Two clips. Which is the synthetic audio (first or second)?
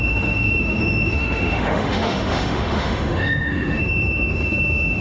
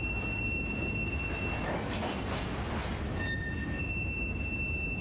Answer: first